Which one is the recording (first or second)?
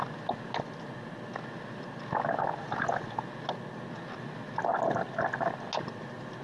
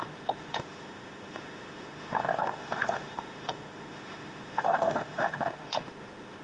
first